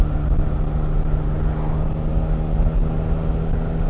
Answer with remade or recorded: recorded